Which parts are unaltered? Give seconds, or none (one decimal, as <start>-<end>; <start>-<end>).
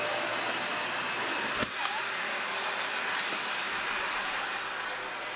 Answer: 0.0-3.6; 4.3-5.4